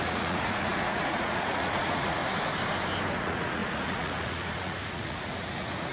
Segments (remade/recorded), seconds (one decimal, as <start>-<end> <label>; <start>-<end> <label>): 0.0-2.2 remade; 2.2-3.1 recorded; 3.1-5.9 remade